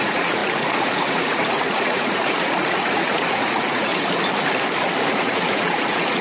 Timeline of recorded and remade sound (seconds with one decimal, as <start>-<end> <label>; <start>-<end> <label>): 0.0-3.9 remade; 3.9-5.0 recorded; 5.0-6.2 remade